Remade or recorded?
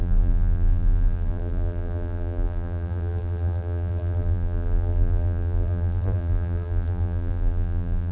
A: remade